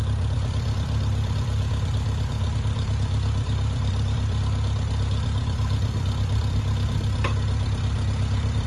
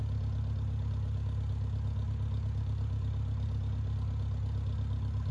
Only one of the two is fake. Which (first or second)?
first